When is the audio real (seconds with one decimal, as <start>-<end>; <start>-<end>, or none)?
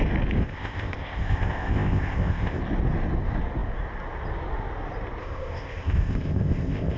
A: 0.0-0.4; 2.6-5.2